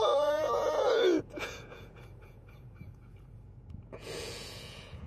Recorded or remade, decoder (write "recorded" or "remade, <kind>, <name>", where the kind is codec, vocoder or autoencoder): remade, vocoder, Vocos